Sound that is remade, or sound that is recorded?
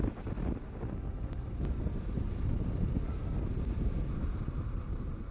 recorded